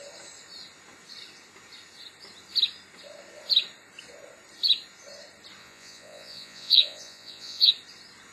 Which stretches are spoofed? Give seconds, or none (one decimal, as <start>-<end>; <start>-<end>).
5.6-7.7